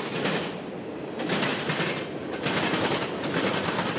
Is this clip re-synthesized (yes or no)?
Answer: no